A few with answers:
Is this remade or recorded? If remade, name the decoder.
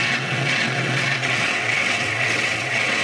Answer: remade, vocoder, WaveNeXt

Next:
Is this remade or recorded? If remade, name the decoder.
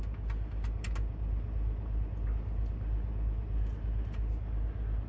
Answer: recorded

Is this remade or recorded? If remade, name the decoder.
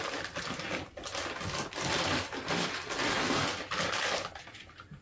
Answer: recorded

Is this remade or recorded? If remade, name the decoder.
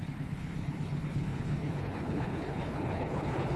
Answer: remade, codec, HILCodec